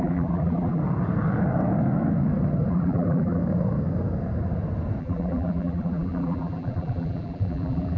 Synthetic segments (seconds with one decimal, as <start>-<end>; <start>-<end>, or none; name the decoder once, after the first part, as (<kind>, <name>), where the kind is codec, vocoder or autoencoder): 0.0-0.8 (vocoder, BigVGAN v2); 2.7-3.4; 5.0-8.0